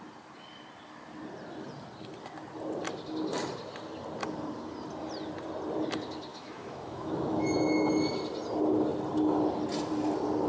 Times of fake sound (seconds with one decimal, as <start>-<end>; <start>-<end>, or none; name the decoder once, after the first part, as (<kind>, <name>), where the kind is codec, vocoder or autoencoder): 6.3-7.9 (autoencoder, DAC-VAE)

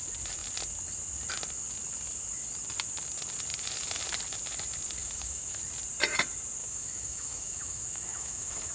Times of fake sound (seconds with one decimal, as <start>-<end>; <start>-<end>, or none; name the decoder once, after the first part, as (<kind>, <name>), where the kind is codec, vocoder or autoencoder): 5.0-5.6 (autoencoder, DAC-VAE); 6.6-8.7

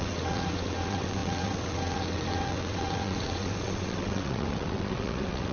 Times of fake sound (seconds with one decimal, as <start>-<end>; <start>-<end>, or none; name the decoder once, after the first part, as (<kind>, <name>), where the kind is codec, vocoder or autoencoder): 0.0-5.5 (vocoder, WaveNeXt)

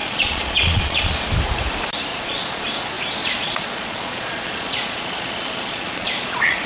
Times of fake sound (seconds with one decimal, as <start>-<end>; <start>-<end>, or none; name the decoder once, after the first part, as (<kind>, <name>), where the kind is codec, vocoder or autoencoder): 0.0-1.2 (vocoder, Vocos); 2.1-2.7; 3.2-6.7

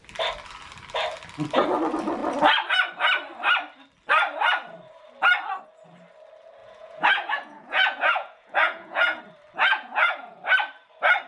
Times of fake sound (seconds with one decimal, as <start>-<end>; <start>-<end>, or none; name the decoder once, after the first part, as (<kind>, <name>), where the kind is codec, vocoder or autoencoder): 6.6-9.2 (vocoder, Vocos); 9.7-10.4